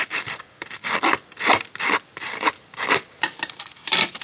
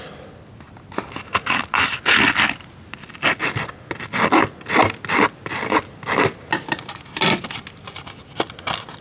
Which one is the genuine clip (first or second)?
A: second